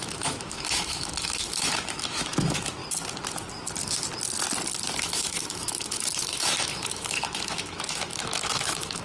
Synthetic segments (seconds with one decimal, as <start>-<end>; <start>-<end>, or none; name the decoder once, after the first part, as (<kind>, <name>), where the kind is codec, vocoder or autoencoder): 0.0-2.8 (autoencoder, DAC-VAE); 5.0-9.0